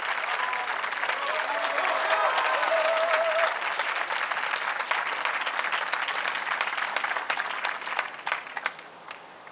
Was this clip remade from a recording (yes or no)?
no